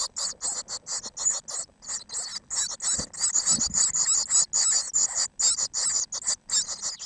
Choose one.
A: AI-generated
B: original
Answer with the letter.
B